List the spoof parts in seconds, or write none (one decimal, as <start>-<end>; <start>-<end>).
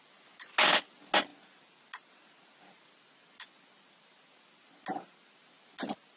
none